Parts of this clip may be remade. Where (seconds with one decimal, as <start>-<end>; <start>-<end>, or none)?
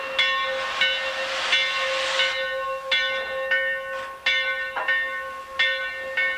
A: none